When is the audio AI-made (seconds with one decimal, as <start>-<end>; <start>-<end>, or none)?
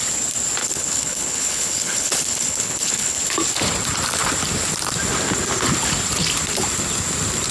0.6-3.2